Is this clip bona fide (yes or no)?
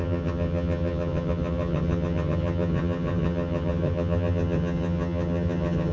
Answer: no